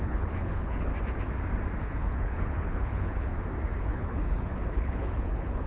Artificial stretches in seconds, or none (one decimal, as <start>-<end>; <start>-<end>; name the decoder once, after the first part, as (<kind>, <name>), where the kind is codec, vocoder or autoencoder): 0.0-0.9 (codec, HILCodec); 1.8-3.3; 3.8-5.7